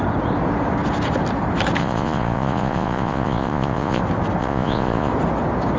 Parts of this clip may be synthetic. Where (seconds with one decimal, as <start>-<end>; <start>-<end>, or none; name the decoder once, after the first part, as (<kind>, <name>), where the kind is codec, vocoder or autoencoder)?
1.8-4.0 (vocoder, Vocos); 4.4-5.1